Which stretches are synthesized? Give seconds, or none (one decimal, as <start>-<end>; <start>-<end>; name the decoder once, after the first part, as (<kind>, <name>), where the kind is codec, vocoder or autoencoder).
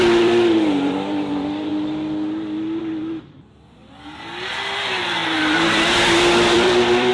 0.0-1.7 (vocoder, BigVGAN v2); 2.8-7.1